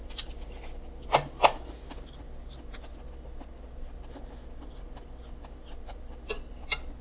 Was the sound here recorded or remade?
recorded